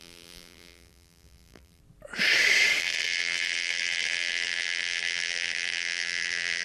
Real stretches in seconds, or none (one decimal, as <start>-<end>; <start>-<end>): 1.8-2.8